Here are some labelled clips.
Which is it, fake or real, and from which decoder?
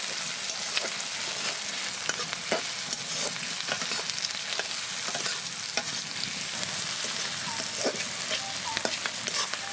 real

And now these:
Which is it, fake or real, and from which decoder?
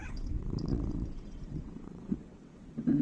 fake, vocoder, WaveNeXt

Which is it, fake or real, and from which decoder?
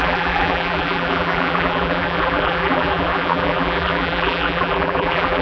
fake, vocoder, BigVGAN v2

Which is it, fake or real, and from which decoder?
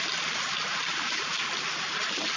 real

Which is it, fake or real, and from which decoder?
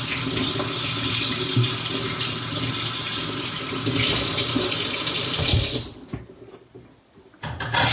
real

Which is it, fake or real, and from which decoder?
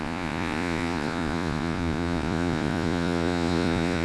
fake, vocoder, Vocos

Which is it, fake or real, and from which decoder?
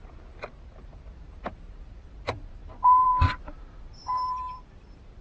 fake, vocoder, BigVGAN v2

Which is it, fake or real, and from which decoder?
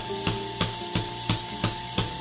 real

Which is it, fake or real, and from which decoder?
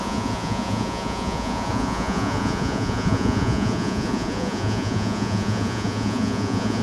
fake, vocoder, Vocos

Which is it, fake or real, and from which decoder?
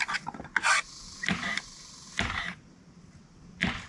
real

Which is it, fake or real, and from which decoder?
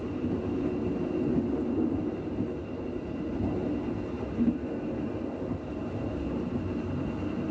real